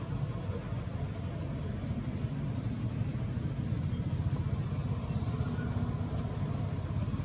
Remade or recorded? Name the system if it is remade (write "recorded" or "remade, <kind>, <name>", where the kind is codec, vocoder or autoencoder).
recorded